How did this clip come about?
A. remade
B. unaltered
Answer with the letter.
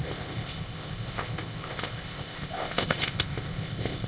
A